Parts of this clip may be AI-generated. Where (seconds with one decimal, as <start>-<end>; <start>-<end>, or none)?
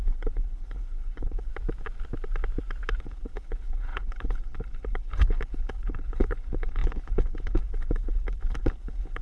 0.0-1.5; 3.0-9.2